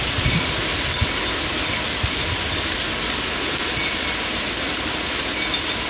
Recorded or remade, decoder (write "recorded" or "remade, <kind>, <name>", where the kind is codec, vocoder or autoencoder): recorded